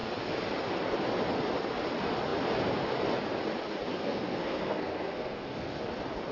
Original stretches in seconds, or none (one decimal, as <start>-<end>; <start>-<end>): 0.0-3.9; 5.8-6.3